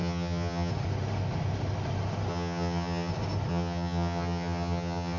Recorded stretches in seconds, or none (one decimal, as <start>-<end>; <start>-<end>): 0.7-2.3; 3.1-3.5